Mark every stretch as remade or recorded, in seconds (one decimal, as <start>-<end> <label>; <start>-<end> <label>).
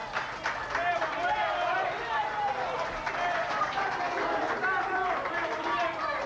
0.0-0.9 recorded; 0.9-6.3 remade